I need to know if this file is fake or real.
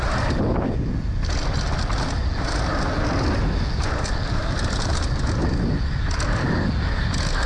real